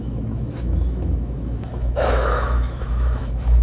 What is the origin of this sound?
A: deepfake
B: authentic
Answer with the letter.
A